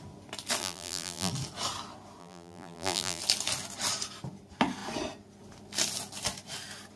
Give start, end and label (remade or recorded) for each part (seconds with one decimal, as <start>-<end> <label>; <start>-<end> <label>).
0.0-0.6 recorded; 0.6-1.3 remade; 1.3-2.2 recorded; 2.2-3.2 remade; 3.2-7.0 recorded